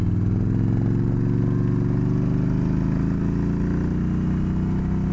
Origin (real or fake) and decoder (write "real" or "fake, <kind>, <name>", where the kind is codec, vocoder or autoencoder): real